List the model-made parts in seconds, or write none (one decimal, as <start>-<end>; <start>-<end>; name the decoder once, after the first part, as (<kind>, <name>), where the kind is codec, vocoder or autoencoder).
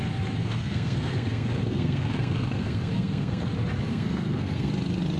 0.4-3.5 (codec, SNAC); 3.9-4.7